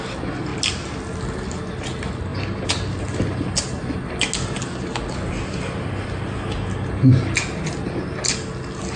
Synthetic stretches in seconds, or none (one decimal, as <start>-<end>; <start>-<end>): none